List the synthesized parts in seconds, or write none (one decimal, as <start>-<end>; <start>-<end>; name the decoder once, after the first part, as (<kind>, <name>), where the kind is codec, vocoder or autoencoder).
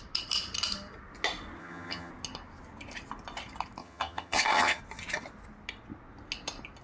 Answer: 1.6-2.1 (vocoder, HiFi-GAN); 3.8-4.8